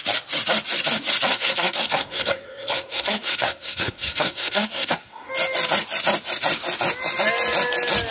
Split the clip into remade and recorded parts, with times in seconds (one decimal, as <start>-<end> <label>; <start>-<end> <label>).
0.0-1.3 recorded; 1.3-5.3 remade; 5.3-8.1 recorded